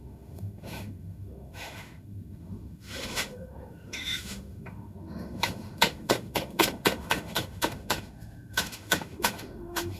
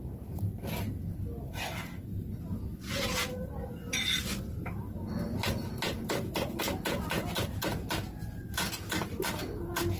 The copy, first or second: first